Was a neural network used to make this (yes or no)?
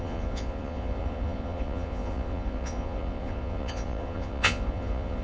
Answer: yes